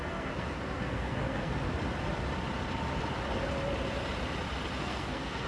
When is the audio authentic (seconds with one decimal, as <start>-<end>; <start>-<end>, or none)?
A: 1.5-4.8

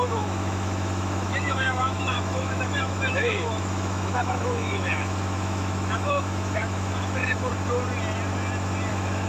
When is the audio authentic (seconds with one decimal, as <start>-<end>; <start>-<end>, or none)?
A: 7.5-8.9

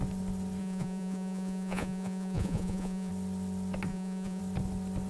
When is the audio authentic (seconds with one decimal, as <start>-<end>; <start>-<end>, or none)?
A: 0.0-0.6; 3.1-3.9; 4.4-5.1

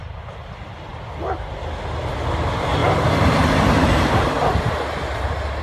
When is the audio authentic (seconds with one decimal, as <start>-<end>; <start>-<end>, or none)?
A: 0.0-2.8; 4.3-5.6

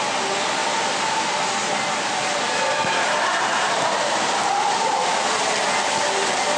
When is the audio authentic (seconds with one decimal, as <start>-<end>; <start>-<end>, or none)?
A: 0.0-6.6

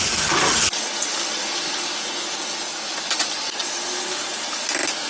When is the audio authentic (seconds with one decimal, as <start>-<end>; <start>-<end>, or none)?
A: 0.0-5.1

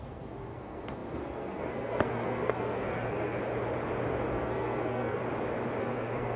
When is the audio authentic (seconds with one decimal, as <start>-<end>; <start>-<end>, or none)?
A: 3.4-4.3; 5.2-5.8